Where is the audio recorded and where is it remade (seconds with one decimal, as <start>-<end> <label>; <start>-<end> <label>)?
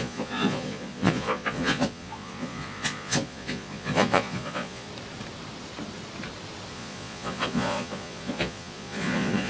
0.0-4.9 remade; 4.9-6.7 recorded; 6.7-9.5 remade